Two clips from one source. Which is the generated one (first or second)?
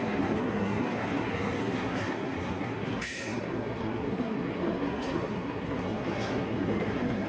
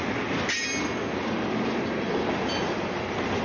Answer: first